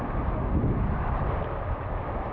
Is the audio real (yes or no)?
yes